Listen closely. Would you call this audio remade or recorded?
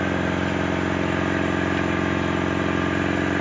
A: recorded